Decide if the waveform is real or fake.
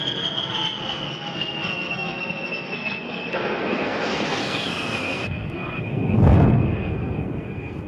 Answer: fake